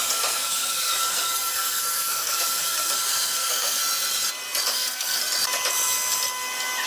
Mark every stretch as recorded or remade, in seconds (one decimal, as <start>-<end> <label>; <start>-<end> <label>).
0.0-3.8 remade; 3.8-4.7 recorded; 4.7-5.2 remade; 5.2-6.9 recorded